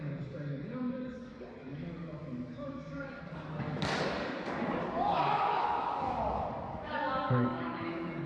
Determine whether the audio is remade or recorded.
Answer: remade